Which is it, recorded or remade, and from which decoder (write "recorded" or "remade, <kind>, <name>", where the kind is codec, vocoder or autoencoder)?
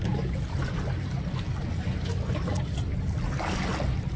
recorded